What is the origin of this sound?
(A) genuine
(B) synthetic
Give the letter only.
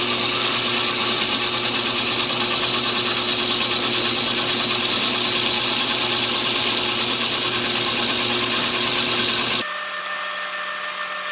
A